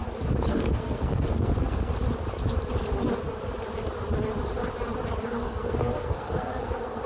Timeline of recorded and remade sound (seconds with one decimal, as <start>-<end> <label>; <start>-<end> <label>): 0.0-0.5 recorded; 0.5-1.9 remade; 1.9-5.3 recorded; 5.3-7.1 remade